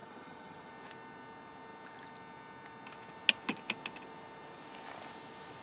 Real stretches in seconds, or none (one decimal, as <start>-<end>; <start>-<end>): 0.7-5.6